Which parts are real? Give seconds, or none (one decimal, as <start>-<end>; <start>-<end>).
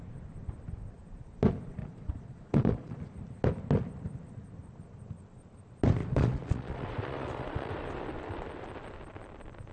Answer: 0.0-1.8; 3.1-6.0; 7.7-9.7